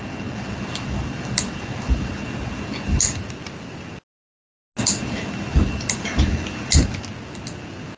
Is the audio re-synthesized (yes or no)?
no